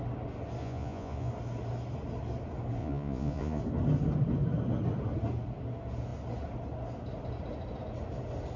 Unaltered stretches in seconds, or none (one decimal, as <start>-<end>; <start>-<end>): 0.0-0.6; 1.3-2.8; 3.6-8.6